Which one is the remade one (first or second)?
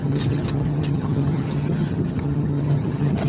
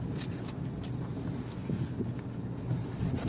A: first